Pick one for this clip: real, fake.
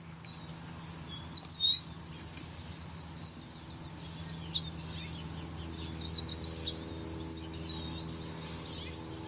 real